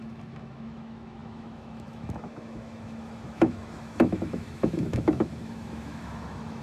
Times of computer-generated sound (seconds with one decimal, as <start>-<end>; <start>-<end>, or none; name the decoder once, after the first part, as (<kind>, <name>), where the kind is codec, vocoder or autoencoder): 0.0-6.6 (autoencoder, DAC-VAE)